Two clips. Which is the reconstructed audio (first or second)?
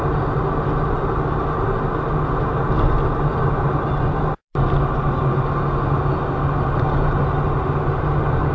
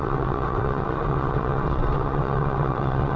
second